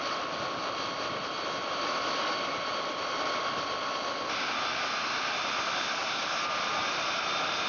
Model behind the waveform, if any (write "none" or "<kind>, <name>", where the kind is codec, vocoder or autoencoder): none